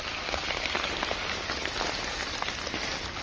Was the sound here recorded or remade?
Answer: recorded